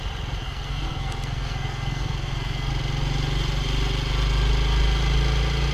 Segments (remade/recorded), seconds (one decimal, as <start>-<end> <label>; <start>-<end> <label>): 0.0-0.4 recorded; 0.4-2.7 remade; 2.7-5.7 recorded